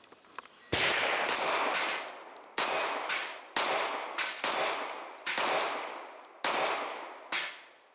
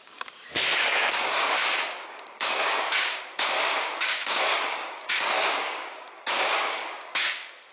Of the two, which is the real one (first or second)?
first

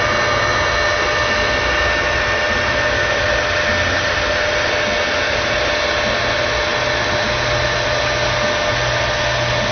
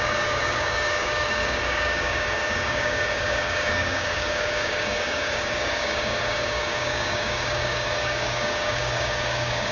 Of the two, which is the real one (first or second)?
first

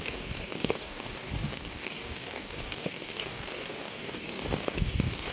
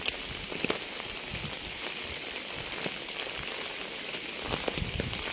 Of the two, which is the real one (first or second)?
second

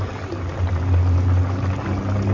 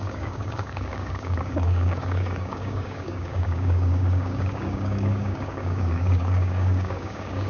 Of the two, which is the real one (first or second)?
first